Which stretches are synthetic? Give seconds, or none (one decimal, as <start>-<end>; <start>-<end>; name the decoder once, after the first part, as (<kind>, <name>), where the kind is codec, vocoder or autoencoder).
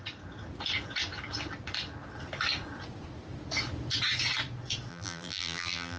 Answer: 4.9-6.0 (vocoder, BigVGAN v2)